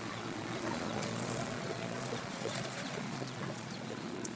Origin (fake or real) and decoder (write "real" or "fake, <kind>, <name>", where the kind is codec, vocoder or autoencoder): fake, vocoder, Vocos